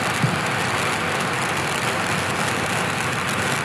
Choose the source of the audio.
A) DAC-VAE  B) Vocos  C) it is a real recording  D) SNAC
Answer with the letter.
C